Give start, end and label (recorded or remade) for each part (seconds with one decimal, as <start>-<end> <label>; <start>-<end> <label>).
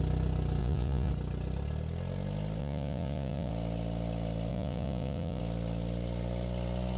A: 0.0-0.6 recorded; 0.6-1.1 remade; 1.1-2.6 recorded; 2.6-3.5 remade; 3.5-4.5 recorded; 4.5-5.4 remade; 5.4-7.0 recorded